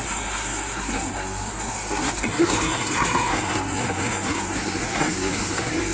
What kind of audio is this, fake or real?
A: fake